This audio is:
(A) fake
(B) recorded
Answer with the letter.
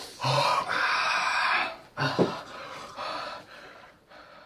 B